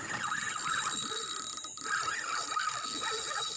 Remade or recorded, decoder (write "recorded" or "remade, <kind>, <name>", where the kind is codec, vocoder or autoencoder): recorded